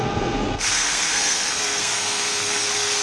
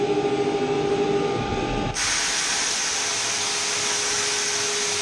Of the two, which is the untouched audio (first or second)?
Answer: second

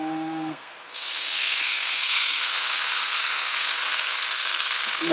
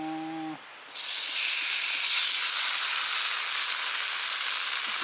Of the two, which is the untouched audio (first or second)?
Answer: second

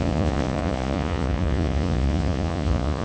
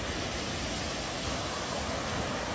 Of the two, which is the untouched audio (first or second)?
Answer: second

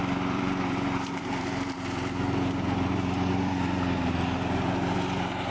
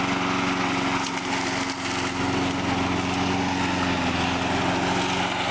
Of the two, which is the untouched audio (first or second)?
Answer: second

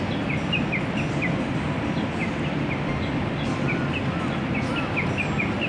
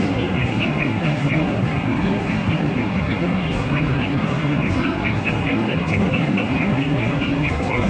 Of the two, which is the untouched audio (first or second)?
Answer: first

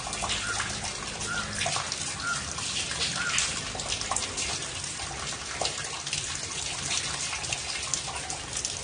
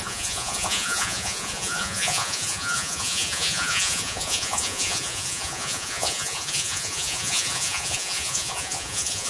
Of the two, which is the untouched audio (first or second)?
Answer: first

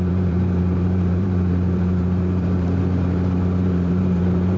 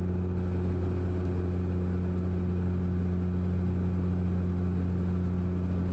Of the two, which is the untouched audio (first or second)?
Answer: second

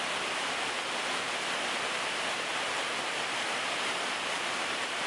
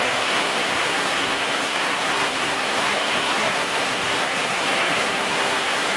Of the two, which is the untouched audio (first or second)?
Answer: first